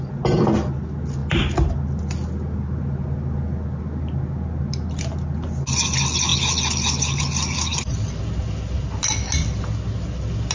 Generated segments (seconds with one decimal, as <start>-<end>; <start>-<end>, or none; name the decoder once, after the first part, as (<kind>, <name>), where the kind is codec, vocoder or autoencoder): none